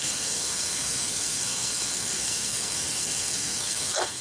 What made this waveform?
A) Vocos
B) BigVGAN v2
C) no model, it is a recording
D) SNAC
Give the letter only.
D